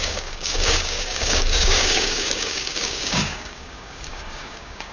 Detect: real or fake fake